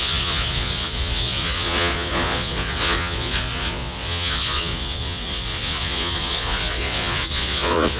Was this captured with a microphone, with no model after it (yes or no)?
no